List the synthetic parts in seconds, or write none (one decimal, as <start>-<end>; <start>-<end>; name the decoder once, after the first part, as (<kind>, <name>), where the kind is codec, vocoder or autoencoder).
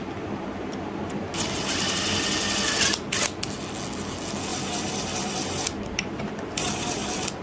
none